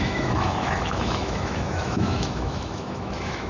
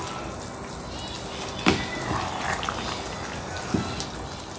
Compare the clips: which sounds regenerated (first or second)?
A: first